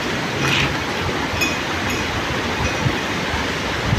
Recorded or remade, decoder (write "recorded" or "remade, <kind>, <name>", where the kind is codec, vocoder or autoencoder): recorded